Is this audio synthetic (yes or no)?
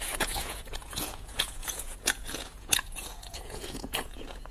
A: yes